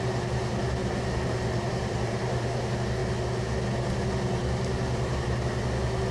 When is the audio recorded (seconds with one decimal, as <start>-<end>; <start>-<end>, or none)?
0.0-0.8; 2.6-6.1